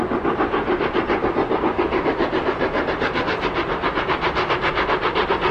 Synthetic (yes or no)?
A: no